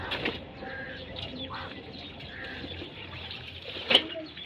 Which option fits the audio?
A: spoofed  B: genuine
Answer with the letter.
A